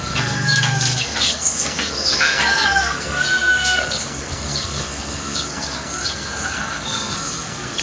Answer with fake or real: fake